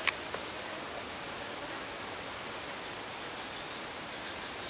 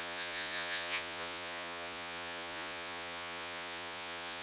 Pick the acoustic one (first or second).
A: first